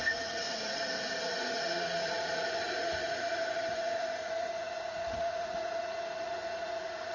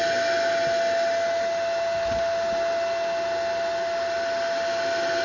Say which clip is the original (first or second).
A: second